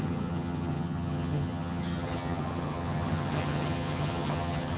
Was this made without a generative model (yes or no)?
no